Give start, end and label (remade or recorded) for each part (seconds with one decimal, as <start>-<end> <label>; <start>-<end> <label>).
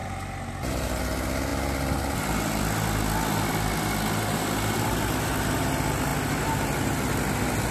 0.0-1.0 remade; 1.0-1.5 recorded; 1.5-2.6 remade; 2.6-7.7 recorded